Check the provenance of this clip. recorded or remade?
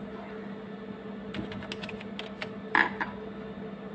recorded